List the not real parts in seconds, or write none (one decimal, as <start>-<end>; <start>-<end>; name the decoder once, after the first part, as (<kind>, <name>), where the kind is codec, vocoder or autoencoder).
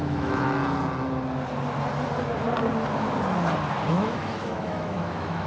0.0-0.6 (autoencoder, DAC-VAE); 3.9-5.5